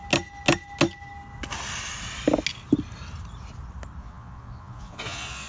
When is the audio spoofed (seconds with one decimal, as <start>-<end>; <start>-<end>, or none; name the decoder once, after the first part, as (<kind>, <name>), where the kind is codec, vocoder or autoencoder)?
4.0-5.5 (vocoder, Vocos)